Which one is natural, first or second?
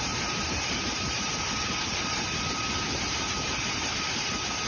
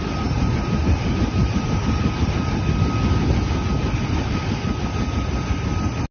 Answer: second